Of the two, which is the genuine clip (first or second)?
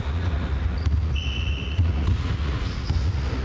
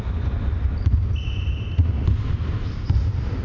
second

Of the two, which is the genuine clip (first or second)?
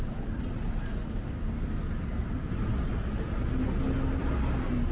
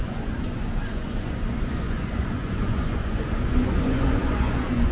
first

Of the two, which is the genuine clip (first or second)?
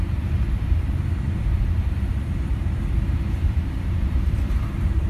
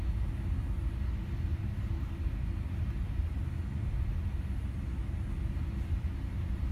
second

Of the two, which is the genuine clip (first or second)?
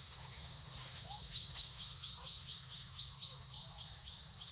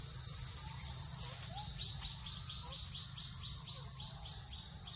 second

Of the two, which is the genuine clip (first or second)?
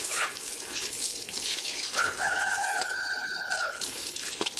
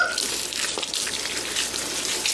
second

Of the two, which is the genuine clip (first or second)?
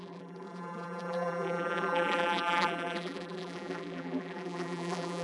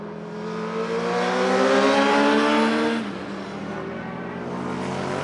second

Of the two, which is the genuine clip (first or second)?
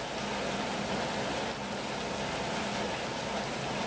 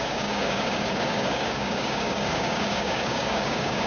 first